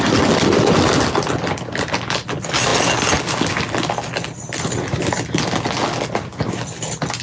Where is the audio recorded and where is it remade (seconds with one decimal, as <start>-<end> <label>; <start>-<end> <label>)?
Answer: 0.0-7.2 recorded